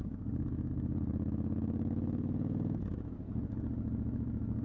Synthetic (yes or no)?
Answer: yes